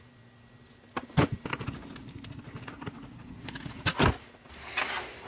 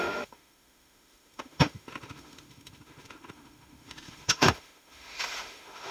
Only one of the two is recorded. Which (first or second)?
first